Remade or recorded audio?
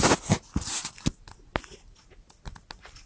recorded